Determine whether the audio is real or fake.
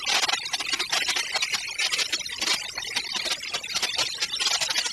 real